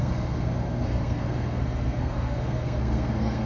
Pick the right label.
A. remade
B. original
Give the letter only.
A